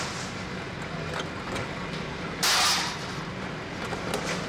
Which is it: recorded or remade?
recorded